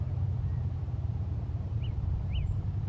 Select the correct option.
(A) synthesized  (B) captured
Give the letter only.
B